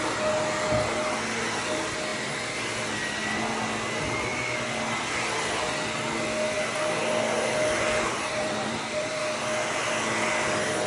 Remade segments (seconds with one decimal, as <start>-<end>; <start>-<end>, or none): 8.3-9.2